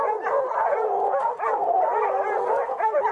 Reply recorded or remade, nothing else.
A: recorded